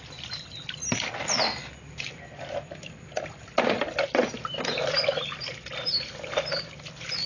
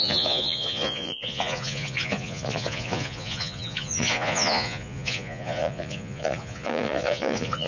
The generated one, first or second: second